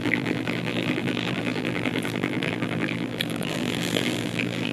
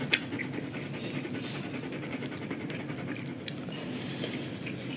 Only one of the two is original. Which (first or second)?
second